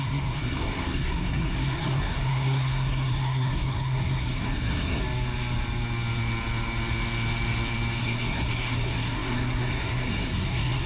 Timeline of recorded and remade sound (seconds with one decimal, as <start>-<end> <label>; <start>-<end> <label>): 0.0-5.0 remade; 5.0-8.0 recorded; 8.0-10.9 remade